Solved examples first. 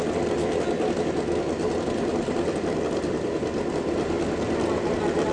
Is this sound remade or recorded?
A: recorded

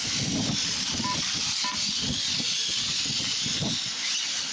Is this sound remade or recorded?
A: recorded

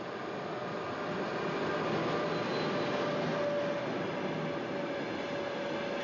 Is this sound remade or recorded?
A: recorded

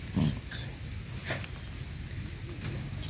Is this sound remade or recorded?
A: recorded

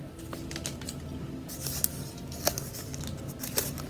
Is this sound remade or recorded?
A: recorded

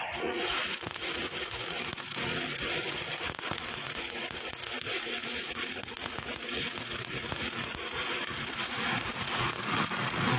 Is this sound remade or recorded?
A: remade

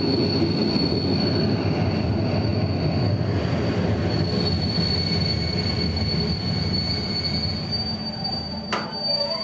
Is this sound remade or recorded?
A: recorded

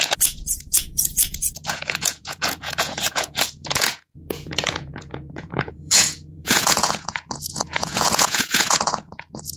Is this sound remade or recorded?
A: remade